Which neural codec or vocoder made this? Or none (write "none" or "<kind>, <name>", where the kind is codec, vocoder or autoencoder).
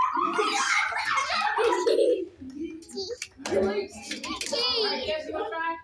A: none